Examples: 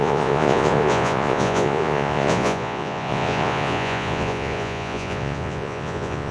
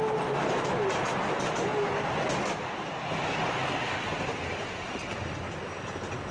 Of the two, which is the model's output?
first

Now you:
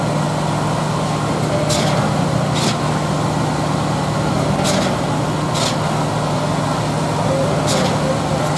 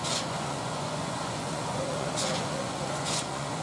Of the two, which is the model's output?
second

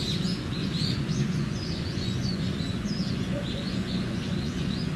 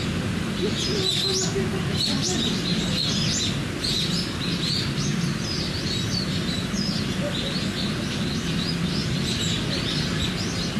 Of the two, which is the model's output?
first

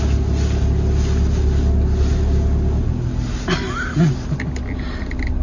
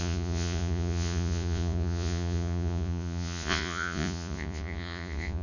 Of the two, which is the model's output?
second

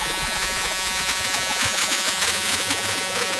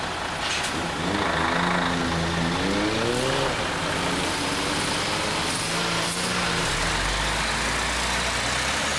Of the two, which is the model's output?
first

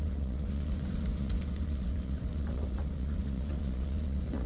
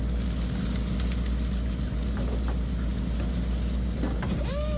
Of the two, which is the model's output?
first